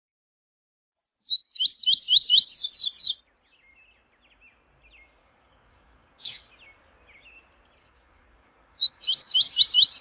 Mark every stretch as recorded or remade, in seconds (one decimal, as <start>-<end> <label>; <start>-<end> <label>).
0.0-5.2 recorded; 5.2-6.5 remade; 6.5-7.8 recorded; 7.8-9.6 remade; 9.6-10.0 recorded